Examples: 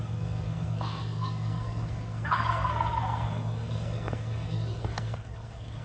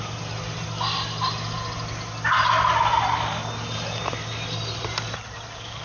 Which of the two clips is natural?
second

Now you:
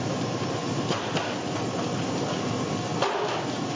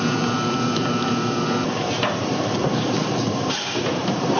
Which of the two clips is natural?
first